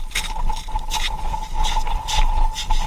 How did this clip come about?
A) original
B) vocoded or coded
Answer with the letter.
A